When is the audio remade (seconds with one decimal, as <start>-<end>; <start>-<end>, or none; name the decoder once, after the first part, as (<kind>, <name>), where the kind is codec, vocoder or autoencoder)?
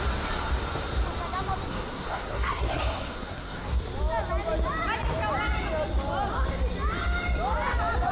1.7-3.8 (codec, SNAC)